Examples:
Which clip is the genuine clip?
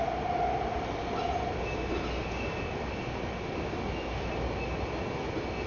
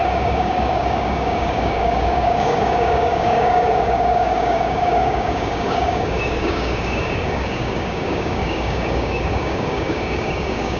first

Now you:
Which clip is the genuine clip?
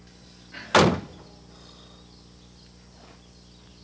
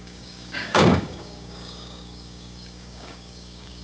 first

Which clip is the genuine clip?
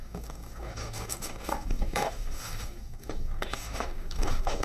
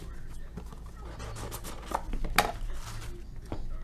second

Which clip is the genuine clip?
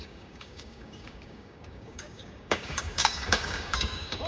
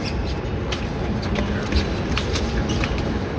second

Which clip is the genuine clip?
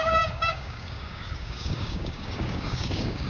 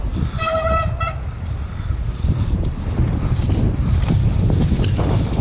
second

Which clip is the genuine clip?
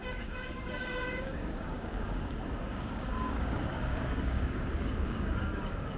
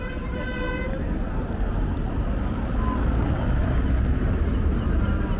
second